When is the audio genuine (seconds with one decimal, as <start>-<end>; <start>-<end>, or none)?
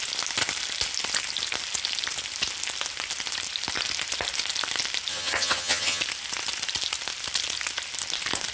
0.0-5.1; 6.0-8.5